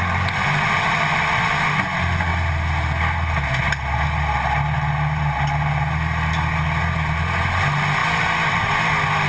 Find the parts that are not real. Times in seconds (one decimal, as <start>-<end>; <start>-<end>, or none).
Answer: none